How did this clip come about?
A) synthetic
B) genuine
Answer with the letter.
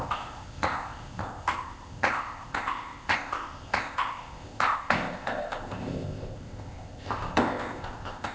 A